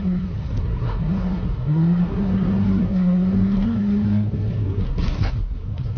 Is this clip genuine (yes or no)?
no